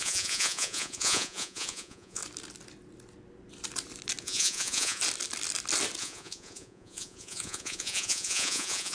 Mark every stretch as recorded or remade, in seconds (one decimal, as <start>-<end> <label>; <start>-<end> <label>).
0.0-2.2 remade; 2.2-4.2 recorded; 4.2-5.0 remade; 5.0-6.0 recorded; 6.0-8.9 remade